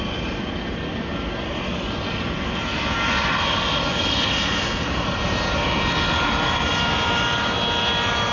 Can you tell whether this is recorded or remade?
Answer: recorded